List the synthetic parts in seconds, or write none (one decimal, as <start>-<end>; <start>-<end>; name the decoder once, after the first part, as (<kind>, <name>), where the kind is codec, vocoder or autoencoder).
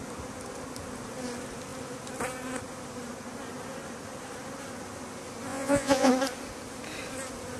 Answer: 5.5-6.1 (vocoder, Vocos)